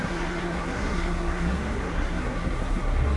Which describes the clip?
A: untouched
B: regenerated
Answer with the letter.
B